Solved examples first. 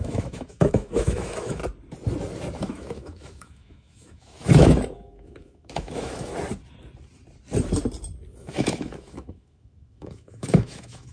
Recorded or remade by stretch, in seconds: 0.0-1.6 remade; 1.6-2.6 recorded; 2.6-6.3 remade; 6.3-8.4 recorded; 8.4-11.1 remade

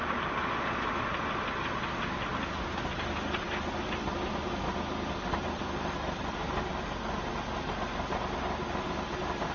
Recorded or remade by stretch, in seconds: 0.0-9.5 recorded

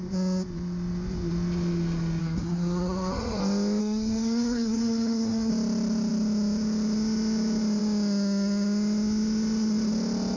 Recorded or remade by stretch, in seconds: 0.0-2.2 recorded; 2.2-3.4 remade; 3.4-3.8 recorded; 3.8-5.5 remade; 5.5-10.4 recorded

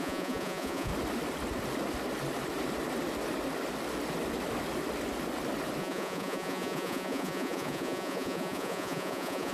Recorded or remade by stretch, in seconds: 0.0-0.9 remade; 0.9-5.8 recorded; 5.8-9.5 remade

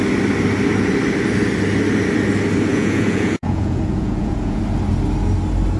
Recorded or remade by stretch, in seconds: 0.0-2.7 recorded; 2.7-4.6 remade; 4.6-5.8 recorded

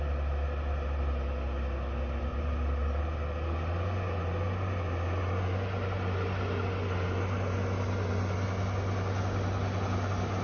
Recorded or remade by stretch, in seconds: 0.0-2.3 recorded; 2.3-3.0 remade; 3.0-10.4 recorded

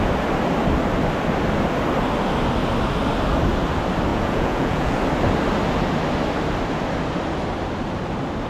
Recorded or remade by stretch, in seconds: 0.0-4.1 recorded; 4.1-5.0 remade; 5.0-8.5 recorded

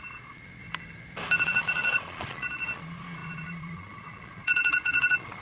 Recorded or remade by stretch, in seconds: 0.0-0.6 remade; 0.6-1.4 recorded; 1.4-5.4 remade